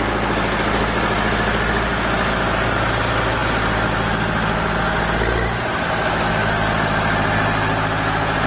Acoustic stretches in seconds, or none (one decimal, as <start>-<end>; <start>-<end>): 0.0-8.5